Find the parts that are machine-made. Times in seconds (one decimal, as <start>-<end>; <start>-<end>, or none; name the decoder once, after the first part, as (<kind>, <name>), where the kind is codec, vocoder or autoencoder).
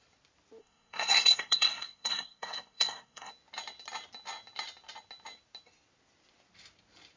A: 0.6-3.3 (codec, SNAC)